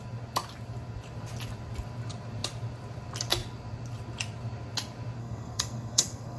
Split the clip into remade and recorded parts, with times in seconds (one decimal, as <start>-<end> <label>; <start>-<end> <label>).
0.0-5.2 recorded; 5.2-6.4 remade